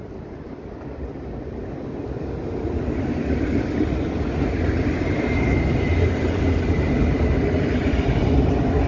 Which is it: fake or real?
real